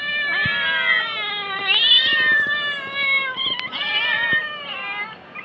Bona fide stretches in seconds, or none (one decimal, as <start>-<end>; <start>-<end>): 0.0-5.4